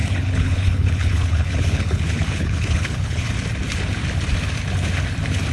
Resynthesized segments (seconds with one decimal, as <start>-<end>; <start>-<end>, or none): 0.0-3.3